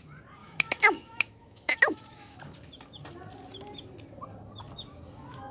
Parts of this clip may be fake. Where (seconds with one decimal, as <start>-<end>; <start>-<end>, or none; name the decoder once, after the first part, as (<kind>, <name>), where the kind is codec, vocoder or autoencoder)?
0.4-2.4 (autoencoder, DAC-VAE)